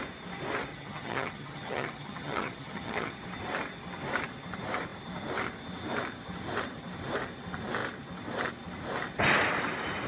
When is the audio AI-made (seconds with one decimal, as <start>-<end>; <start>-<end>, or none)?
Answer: 0.7-3.2